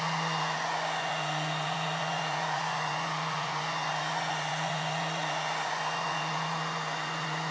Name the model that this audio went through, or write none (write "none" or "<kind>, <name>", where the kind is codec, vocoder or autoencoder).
vocoder, Vocos